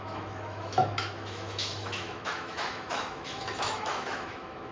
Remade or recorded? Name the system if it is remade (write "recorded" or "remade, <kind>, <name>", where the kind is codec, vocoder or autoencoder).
remade, autoencoder, DAC-VAE